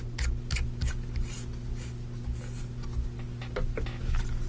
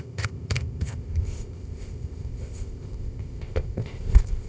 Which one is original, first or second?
first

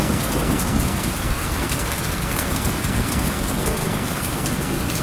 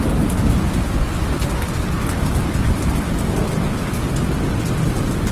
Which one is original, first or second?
second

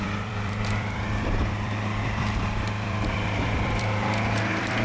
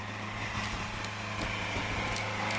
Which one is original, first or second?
second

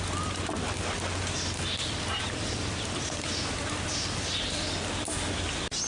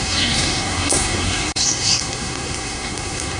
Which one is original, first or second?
first